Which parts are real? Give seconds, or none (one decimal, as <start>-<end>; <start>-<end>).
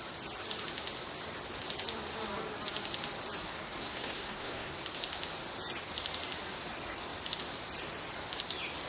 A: 0.0-3.8; 4.7-8.9